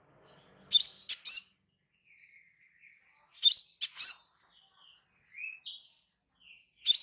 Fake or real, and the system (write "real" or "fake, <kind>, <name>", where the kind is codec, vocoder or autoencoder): real